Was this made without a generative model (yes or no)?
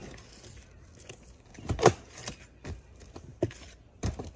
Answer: yes